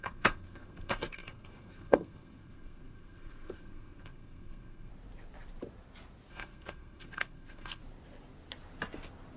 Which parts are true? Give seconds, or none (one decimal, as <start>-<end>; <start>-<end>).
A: 4.9-6.3; 7.8-9.4